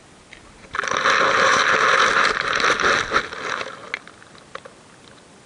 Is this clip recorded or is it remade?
recorded